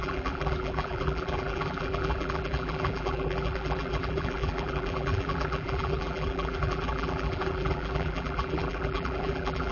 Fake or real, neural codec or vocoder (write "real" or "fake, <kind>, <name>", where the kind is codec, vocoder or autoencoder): fake, vocoder, BigVGAN v2